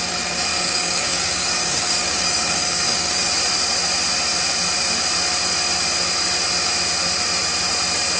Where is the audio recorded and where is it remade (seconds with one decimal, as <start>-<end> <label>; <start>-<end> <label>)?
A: 0.0-0.5 recorded; 0.5-3.3 remade; 3.3-8.2 recorded